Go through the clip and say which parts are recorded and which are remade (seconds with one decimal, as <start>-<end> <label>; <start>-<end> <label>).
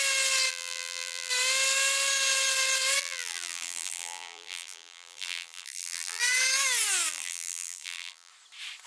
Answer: 0.0-0.5 recorded; 0.5-1.3 remade; 1.3-3.0 recorded; 3.0-6.2 remade; 6.2-7.1 recorded; 7.1-8.3 remade; 8.3-8.9 recorded